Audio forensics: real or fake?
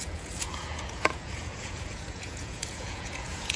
fake